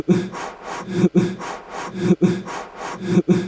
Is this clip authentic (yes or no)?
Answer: yes